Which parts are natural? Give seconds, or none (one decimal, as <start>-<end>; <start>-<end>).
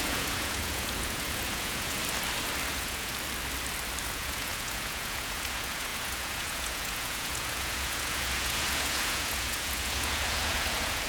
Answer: 2.0-2.7; 3.1-4.0